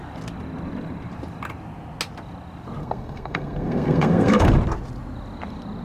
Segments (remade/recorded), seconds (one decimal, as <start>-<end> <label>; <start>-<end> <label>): 0.0-2.8 recorded; 2.8-4.5 remade; 4.5-5.8 recorded